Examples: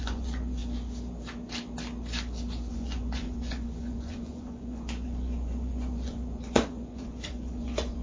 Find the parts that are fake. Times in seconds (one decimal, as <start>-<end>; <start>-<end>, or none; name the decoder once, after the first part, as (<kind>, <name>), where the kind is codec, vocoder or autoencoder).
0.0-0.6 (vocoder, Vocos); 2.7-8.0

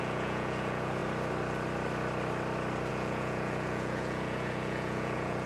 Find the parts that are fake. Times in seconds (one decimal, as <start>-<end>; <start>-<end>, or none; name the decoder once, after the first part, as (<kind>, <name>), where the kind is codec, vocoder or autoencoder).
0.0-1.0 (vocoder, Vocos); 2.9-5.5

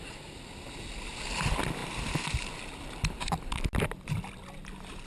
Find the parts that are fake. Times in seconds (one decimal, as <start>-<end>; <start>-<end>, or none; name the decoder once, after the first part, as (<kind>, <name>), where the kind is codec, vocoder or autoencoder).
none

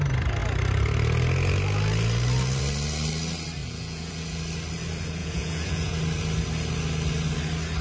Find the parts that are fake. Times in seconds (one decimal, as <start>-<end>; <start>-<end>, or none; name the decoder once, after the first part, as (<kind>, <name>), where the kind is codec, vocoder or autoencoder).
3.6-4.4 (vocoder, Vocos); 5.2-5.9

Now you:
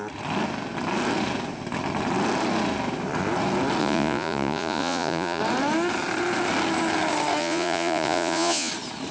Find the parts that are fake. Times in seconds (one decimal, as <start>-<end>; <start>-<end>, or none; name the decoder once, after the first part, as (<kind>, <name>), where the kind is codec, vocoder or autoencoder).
3.8-5.4 (vocoder, Vocos); 7.4-8.7

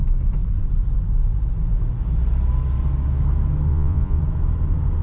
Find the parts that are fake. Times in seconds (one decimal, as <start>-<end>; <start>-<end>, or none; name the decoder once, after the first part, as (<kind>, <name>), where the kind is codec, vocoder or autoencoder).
3.7-4.2 (vocoder, Vocos)

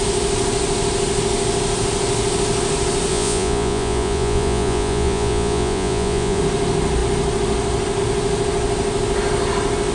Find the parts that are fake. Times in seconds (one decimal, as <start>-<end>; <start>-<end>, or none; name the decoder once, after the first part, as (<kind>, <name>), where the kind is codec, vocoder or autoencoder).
3.1-6.4 (vocoder, Vocos)

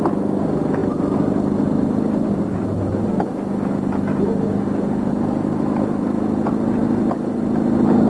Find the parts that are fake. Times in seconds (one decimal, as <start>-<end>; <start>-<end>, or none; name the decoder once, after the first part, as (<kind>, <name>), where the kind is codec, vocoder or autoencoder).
none